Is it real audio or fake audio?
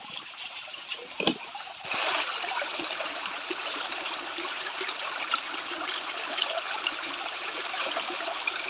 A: fake